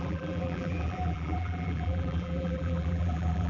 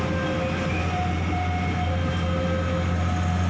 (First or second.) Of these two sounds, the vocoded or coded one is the first